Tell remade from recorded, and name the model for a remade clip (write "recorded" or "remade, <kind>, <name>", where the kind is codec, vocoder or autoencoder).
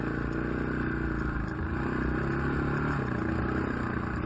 recorded